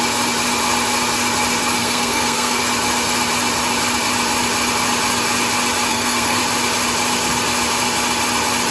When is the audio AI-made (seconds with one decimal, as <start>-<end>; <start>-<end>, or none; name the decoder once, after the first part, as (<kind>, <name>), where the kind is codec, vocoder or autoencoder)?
1.8-2.6 (codec, SNAC); 5.9-6.4